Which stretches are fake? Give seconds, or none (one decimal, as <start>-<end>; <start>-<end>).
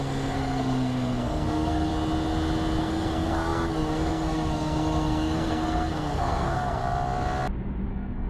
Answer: 0.0-1.9; 2.8-6.8; 7.9-8.3